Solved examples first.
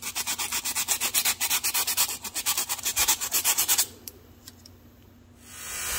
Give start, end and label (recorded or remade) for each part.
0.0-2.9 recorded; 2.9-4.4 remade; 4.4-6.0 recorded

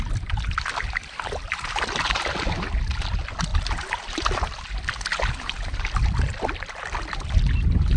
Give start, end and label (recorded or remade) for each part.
0.0-3.5 recorded; 3.5-4.8 remade; 4.8-8.0 recorded

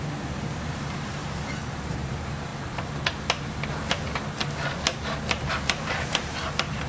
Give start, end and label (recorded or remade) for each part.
0.0-1.2 remade; 1.2-1.8 recorded; 1.8-2.5 remade; 2.5-5.5 recorded; 5.5-6.9 remade

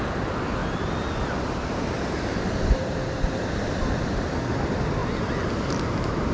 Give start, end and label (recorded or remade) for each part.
0.0-0.6 recorded; 0.6-4.4 remade; 4.4-6.3 recorded

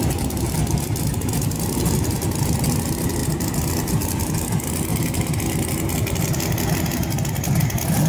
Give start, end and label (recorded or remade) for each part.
0.0-8.1 recorded

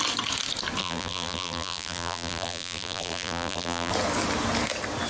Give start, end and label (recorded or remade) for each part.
0.0-0.8 recorded; 0.8-3.9 remade; 3.9-5.1 recorded